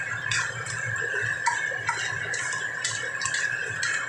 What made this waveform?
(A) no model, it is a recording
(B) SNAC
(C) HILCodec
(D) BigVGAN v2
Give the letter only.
A